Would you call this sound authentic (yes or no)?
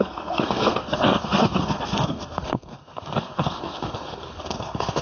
no